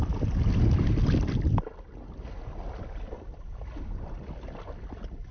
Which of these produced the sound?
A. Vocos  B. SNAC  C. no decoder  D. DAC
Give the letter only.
C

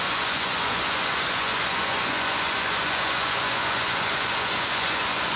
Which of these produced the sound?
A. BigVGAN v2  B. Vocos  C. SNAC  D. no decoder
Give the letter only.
B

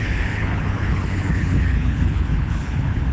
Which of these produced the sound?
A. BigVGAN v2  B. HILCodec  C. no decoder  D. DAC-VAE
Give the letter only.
B